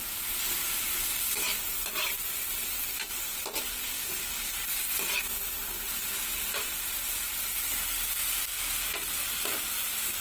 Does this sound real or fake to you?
real